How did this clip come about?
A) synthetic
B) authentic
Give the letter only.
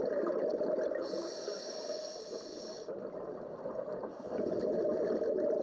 B